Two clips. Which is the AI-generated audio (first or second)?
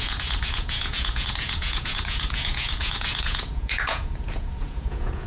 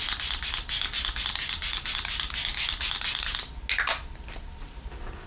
first